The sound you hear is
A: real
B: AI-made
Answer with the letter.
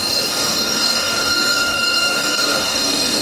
B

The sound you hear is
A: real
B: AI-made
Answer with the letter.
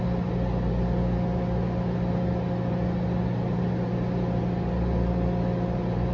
A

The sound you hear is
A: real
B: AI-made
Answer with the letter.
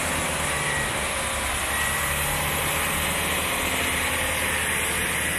A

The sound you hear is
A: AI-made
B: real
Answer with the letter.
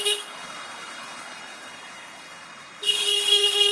A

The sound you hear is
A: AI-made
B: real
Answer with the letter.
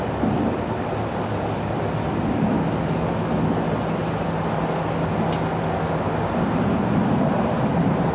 B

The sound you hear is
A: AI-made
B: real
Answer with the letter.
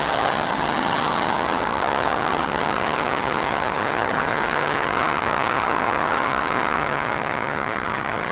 A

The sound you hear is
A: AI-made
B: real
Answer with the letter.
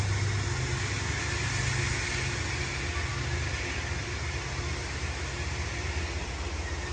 B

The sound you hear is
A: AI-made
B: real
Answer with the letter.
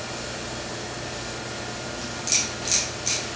B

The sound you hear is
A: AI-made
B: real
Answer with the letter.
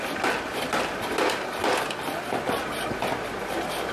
A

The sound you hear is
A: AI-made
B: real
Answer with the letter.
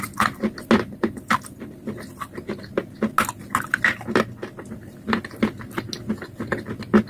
B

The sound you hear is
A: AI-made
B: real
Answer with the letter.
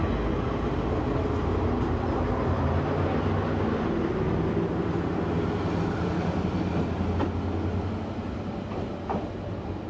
B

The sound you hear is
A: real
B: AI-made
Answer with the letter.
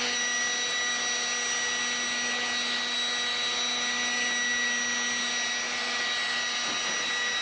A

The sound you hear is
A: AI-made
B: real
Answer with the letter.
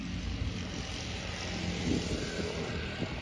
B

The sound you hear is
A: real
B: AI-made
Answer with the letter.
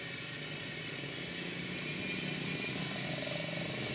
A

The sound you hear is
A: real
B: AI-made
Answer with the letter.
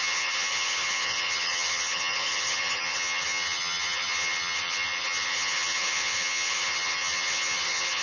B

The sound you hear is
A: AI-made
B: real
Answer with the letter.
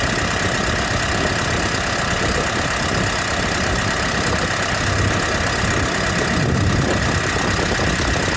B